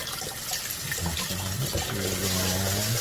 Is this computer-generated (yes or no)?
no